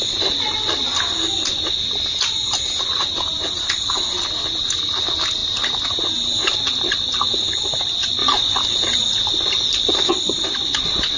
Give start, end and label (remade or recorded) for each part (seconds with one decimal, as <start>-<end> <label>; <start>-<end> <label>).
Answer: 0.0-11.2 recorded